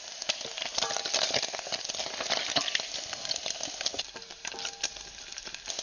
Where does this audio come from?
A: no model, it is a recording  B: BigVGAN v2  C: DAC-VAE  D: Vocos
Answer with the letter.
A